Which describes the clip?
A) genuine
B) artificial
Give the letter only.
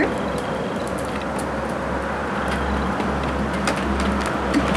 A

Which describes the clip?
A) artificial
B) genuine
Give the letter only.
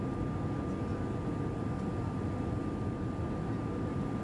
B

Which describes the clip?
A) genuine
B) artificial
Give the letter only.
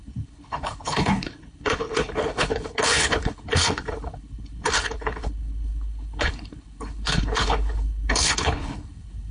B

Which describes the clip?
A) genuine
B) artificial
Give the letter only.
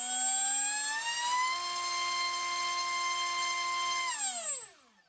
A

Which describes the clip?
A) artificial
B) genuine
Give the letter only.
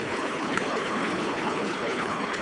A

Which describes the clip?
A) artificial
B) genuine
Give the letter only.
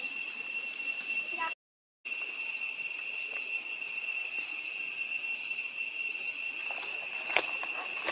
B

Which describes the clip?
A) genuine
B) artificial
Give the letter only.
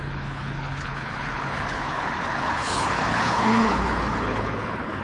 B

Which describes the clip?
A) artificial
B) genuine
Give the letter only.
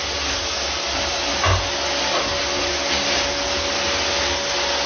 B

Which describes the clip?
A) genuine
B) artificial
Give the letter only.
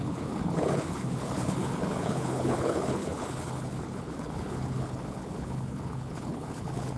B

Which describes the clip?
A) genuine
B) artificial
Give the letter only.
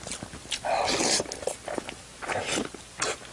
A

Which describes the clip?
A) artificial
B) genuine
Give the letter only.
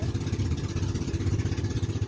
B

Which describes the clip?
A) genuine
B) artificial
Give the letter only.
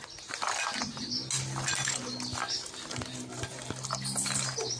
A